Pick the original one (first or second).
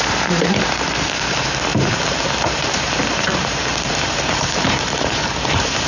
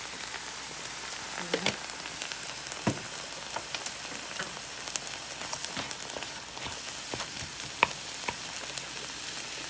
second